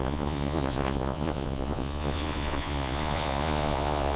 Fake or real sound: fake